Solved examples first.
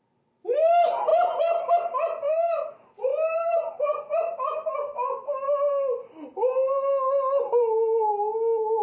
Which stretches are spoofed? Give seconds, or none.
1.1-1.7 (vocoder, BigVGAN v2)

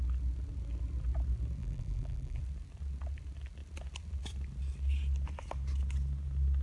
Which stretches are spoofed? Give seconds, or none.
1.6-2.4 (vocoder, BigVGAN v2)

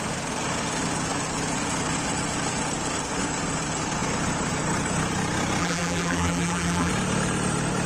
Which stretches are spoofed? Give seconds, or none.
5.6-6.9 (vocoder, BigVGAN v2)

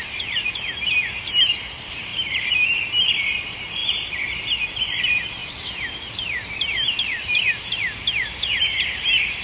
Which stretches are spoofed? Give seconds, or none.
0.0-5.4 (vocoder, BigVGAN v2); 6.0-9.4

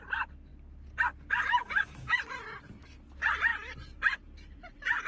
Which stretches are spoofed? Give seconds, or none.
3.5-5.1 (vocoder, BigVGAN v2)

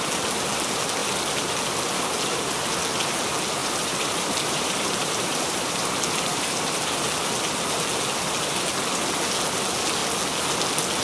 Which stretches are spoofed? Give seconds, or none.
3.6-6.8 (vocoder, BigVGAN v2)

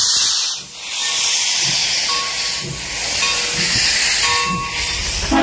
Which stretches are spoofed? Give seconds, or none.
none

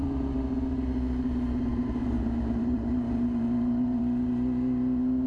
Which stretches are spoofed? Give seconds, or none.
1.7-4.0 (vocoder, BigVGAN v2)